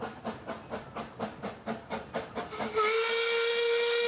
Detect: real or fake real